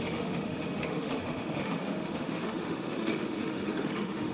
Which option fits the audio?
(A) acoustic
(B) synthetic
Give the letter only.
B